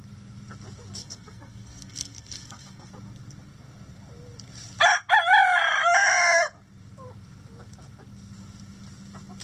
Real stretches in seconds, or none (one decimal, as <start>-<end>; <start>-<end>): 0.0-1.0; 2.9-9.4